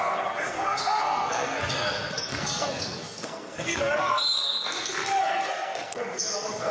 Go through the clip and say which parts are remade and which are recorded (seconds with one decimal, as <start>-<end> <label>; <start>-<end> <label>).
0.0-6.7 remade